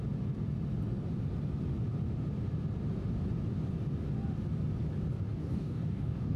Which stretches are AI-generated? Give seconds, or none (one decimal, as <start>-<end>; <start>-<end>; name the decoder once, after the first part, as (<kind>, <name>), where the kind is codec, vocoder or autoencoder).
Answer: 5.4-6.4 (codec, DAC)